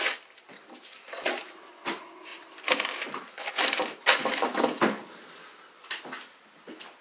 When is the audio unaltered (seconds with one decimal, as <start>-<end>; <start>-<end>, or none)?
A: 0.0-2.3; 4.6-7.0